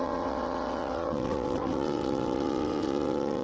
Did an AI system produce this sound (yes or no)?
yes